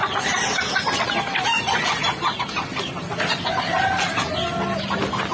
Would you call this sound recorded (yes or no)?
yes